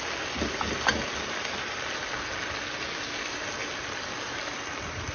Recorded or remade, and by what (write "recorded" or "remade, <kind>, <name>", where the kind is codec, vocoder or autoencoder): recorded